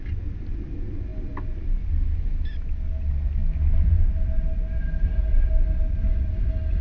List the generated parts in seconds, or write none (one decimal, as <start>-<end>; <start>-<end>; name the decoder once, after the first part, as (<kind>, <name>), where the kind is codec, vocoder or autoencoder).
none